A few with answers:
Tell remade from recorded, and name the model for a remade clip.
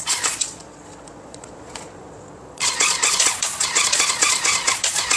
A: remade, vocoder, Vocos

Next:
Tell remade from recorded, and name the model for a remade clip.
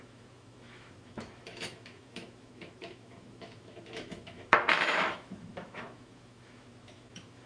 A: remade, autoencoder, DAC-VAE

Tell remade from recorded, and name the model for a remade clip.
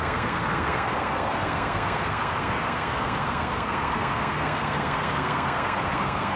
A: remade, codec, SNAC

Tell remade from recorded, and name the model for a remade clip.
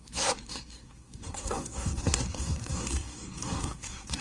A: remade, codec, SNAC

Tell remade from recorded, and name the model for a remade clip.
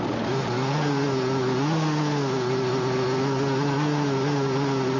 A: recorded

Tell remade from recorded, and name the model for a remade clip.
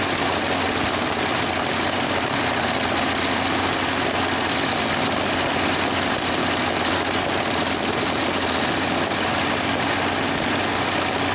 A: recorded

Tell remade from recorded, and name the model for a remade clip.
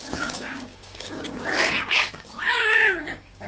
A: remade, codec, DAC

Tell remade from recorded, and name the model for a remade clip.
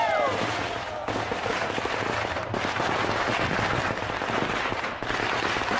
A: recorded